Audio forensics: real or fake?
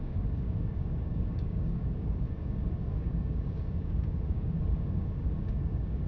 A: fake